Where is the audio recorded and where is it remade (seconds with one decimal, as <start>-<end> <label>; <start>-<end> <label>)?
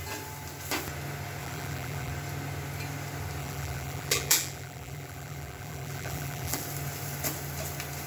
0.0-1.4 recorded; 1.4-2.1 remade; 2.1-3.4 recorded; 3.4-6.6 remade; 6.6-8.1 recorded